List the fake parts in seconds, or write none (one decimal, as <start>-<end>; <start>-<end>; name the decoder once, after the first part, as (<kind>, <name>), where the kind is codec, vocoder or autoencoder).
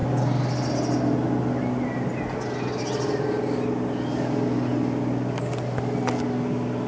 none